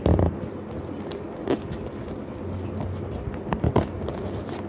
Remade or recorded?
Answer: recorded